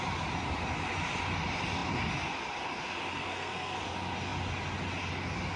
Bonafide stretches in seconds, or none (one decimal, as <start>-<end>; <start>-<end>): 0.0-3.1; 3.8-5.6

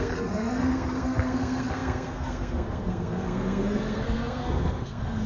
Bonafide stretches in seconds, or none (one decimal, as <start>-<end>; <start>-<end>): none

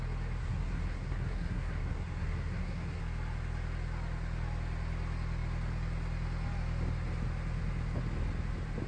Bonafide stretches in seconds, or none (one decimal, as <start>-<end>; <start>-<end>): 0.0-0.4; 3.0-8.9

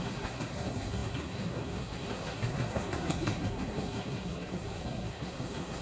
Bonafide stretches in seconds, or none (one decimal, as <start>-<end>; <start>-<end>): none

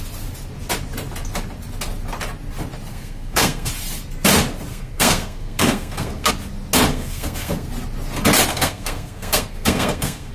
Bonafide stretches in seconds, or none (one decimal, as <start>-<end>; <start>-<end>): 0.0-2.9; 3.7-4.7; 6.3-6.9; 7.7-8.5

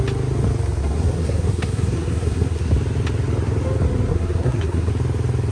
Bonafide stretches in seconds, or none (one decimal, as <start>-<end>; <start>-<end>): 0.0-0.8; 2.7-4.1; 4.9-5.5